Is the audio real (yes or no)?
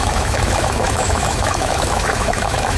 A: no